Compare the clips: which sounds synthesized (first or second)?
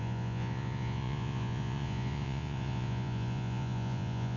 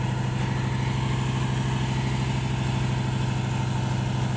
first